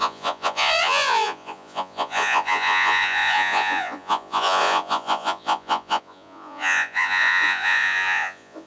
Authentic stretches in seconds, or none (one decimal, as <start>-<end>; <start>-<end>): none